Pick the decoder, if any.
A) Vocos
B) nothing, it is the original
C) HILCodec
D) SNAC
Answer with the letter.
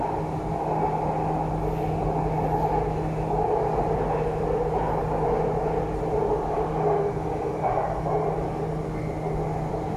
B